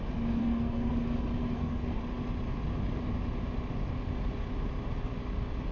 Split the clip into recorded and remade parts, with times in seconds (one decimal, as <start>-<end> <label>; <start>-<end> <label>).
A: 0.0-0.4 recorded; 0.4-0.9 remade; 0.9-1.4 recorded; 1.4-2.0 remade; 2.0-5.7 recorded